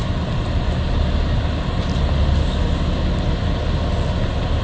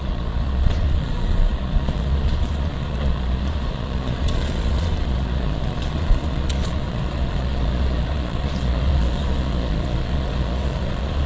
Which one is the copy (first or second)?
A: second